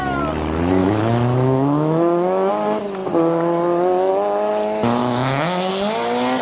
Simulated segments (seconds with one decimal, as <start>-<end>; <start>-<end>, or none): 0.8-2.5; 5.0-5.7